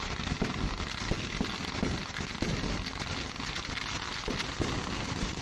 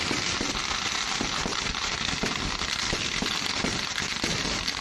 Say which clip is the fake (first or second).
second